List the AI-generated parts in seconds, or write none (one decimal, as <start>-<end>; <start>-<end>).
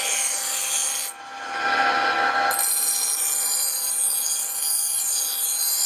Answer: none